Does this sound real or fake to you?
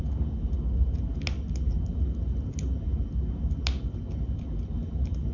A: real